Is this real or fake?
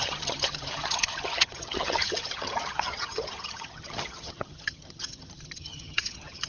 fake